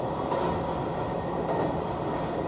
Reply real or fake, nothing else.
real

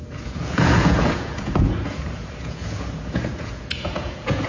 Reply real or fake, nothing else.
fake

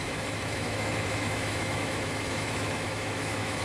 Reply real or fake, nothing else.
fake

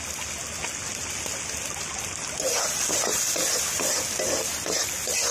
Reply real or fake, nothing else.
real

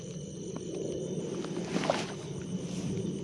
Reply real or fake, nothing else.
real